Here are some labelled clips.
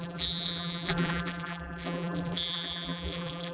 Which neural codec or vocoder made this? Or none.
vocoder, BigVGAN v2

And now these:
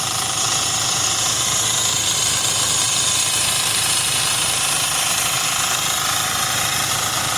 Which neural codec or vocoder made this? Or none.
vocoder, BigVGAN v2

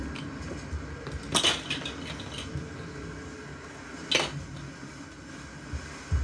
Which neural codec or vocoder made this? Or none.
none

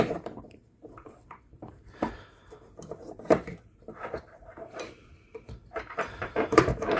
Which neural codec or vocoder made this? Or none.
vocoder, BigVGAN v2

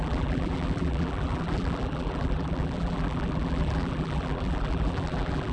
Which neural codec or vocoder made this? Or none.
vocoder, BigVGAN v2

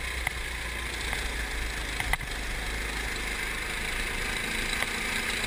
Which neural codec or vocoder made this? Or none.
none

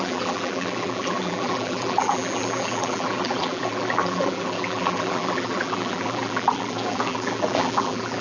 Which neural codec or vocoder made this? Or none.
vocoder, BigVGAN v2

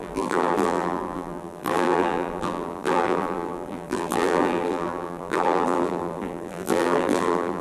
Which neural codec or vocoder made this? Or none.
vocoder, BigVGAN v2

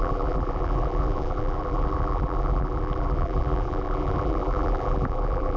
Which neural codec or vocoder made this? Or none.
vocoder, BigVGAN v2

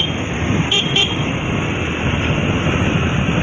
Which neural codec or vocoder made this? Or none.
vocoder, BigVGAN v2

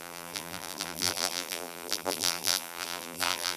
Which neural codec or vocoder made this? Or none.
vocoder, BigVGAN v2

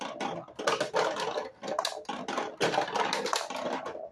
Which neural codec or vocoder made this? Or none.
none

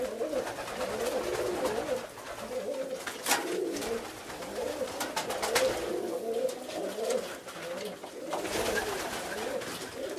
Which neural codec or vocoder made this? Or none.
none